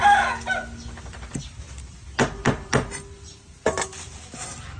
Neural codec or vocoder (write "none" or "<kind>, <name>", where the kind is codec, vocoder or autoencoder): none